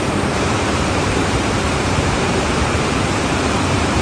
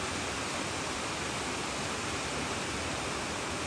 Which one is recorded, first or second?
second